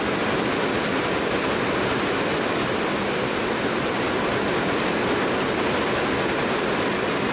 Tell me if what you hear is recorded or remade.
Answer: recorded